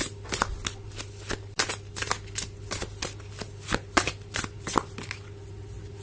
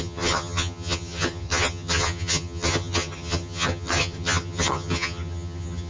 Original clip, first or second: first